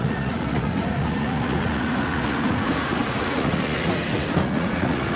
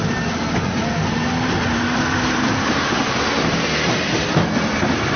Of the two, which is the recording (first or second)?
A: second